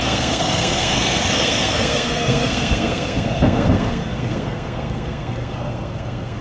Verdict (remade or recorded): remade